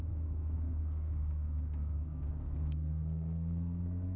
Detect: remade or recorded remade